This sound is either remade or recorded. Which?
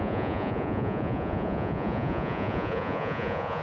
remade